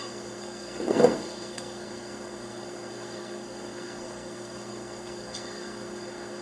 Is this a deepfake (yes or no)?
yes